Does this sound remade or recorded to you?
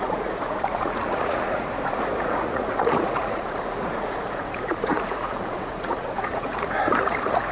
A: remade